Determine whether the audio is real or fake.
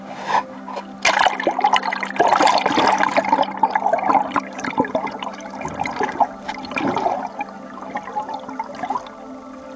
real